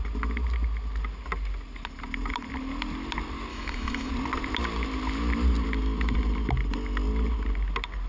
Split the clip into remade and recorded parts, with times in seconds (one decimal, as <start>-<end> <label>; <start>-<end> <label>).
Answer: 0.0-3.5 recorded; 3.5-4.1 remade; 4.1-8.1 recorded